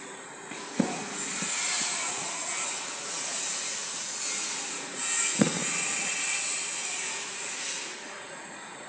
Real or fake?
fake